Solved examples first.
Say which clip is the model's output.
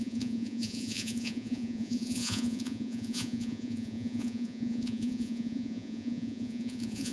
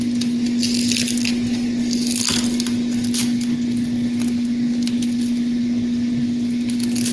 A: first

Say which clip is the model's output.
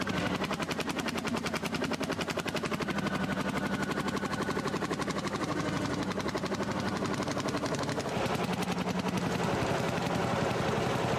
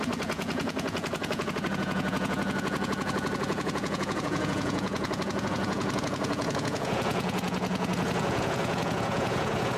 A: second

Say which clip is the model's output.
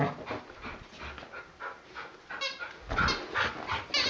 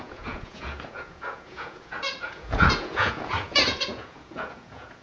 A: second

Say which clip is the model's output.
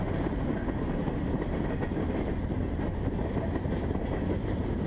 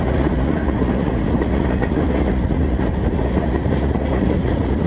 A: second